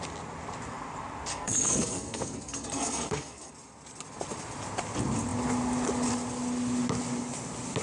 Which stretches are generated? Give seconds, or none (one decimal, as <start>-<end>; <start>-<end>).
1.3-3.5